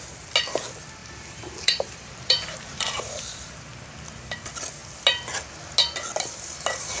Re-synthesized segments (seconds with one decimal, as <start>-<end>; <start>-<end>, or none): 1.0-3.0